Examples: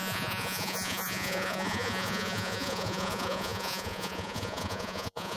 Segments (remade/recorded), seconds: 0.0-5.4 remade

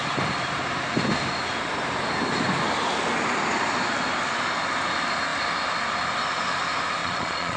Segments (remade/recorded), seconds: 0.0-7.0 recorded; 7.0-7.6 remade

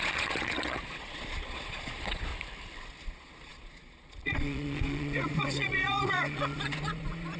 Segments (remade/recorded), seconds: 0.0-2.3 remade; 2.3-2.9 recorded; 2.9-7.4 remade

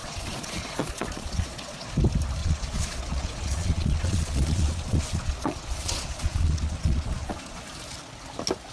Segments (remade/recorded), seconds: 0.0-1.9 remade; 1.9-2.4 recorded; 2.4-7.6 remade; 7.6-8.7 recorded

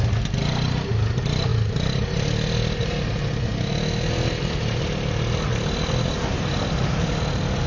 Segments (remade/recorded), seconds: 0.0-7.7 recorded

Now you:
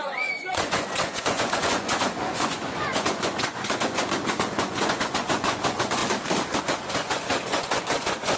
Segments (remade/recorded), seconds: 0.0-6.0 remade; 6.0-6.6 recorded; 6.6-8.4 remade